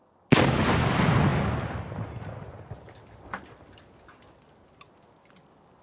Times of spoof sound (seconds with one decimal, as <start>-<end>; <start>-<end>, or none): none